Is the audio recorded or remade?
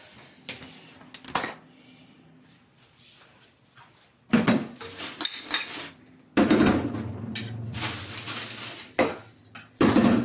recorded